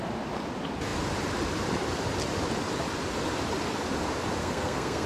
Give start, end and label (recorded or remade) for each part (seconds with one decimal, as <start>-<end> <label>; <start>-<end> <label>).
0.0-4.4 recorded; 4.4-5.1 remade